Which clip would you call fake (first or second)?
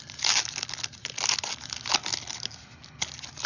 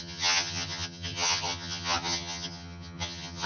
second